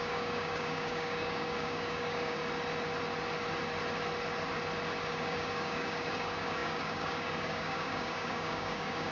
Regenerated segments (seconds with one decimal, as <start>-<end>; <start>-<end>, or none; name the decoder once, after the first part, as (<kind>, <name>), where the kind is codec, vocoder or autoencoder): 0.0-2.4 (codec, DAC); 5.1-9.1